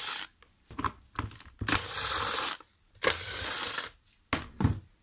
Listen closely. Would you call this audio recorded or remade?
recorded